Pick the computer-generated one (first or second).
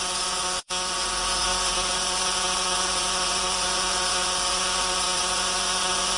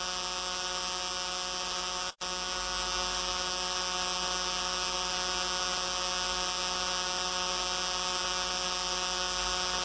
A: first